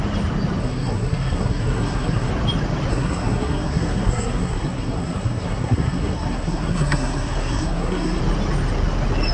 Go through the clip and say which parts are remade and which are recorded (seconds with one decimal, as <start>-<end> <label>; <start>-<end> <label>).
0.0-0.6 recorded; 0.6-2.3 remade; 2.3-2.9 recorded; 2.9-8.2 remade; 8.2-9.3 recorded